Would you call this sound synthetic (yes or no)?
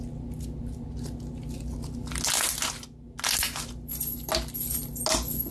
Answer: no